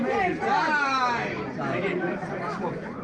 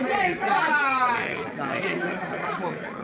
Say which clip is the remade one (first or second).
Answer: second